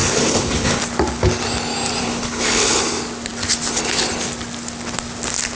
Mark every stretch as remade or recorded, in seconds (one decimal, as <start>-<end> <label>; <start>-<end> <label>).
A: 0.0-0.8 remade; 0.8-2.0 recorded; 2.0-2.8 remade; 2.8-5.5 recorded